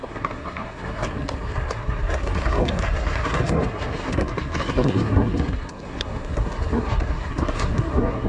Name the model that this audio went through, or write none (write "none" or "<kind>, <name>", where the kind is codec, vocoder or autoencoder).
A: codec, SNAC